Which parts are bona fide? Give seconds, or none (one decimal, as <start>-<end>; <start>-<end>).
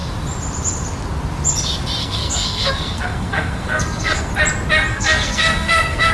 0.0-2.0; 4.3-4.9